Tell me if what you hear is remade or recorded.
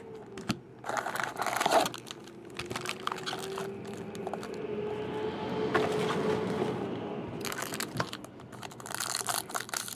recorded